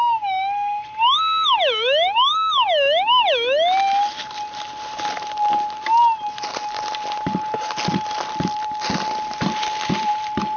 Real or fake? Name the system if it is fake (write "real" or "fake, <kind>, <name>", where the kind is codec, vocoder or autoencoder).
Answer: real